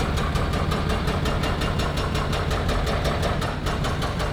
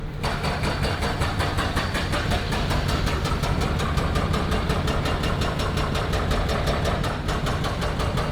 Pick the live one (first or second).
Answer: first